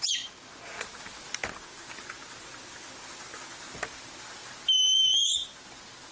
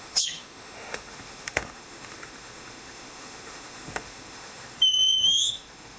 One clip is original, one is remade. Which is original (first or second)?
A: first